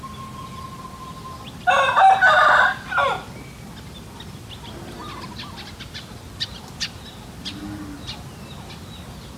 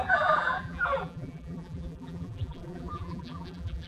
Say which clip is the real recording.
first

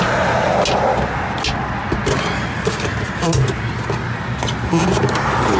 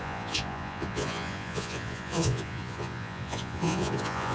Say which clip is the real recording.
first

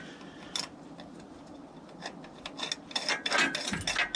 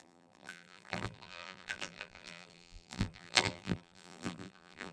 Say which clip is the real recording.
first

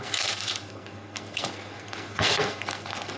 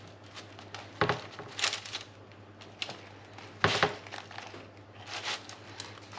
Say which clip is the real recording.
second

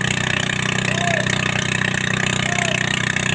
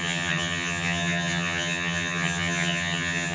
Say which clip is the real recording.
first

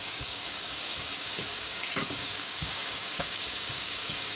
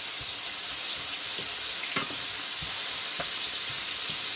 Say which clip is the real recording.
second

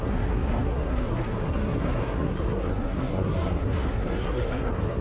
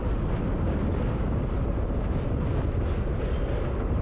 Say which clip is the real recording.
second